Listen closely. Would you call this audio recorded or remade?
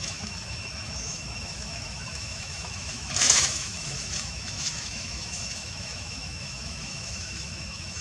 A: remade